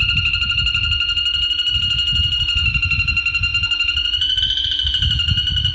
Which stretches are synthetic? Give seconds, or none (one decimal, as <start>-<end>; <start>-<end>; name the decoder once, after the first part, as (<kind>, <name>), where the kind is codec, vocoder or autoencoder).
none